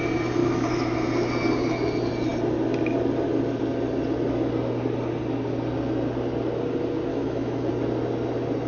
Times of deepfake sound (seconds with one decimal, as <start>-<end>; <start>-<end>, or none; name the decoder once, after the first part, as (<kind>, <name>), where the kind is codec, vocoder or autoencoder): 0.4-0.9 (autoencoder, DAC-VAE); 7.1-7.7